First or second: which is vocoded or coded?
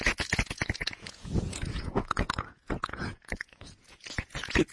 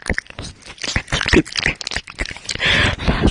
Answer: first